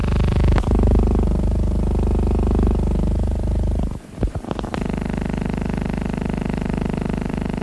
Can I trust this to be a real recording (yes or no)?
no